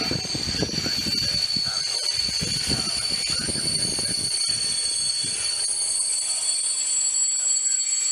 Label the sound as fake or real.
real